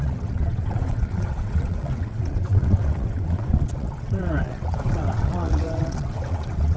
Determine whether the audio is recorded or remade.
remade